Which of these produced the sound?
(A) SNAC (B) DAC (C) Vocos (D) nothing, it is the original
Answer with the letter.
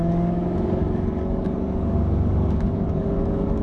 B